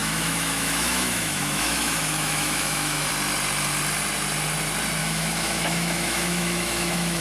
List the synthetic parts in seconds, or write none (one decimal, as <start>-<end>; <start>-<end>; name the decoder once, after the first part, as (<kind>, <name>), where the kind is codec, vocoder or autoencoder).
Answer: 0.0-3.1 (autoencoder, DAC-VAE); 5.0-7.2